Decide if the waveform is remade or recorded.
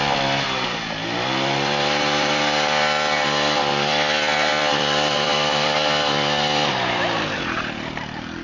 remade